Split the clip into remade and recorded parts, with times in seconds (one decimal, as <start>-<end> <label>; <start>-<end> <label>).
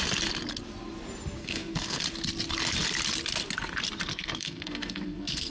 0.0-1.4 recorded; 1.4-2.0 remade; 2.0-4.1 recorded; 4.1-5.5 remade